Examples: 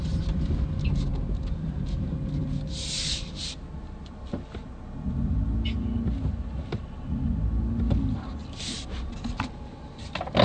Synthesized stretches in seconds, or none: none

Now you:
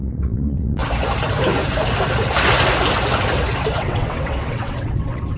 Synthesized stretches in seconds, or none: 0.0-0.8 (vocoder, WaveNeXt); 3.7-5.4

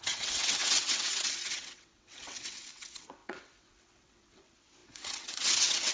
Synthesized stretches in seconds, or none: 0.0-5.9 (vocoder, WaveNeXt)

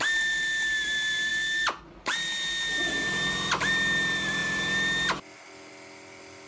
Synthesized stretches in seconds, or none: none

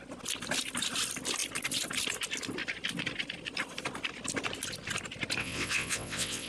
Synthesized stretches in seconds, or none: 5.4-6.5 (vocoder, WaveNeXt)

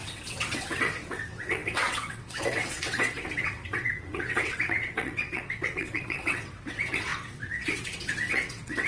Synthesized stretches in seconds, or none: 0.0-8.9 (vocoder, WaveNeXt)

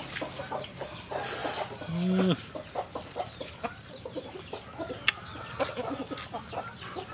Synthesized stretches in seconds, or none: none